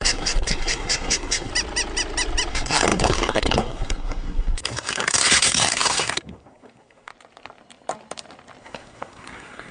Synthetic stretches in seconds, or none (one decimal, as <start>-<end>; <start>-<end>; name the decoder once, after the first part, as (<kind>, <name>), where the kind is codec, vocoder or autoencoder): 0.0-1.5 (codec, SNAC); 2.5-7.1; 8.6-9.7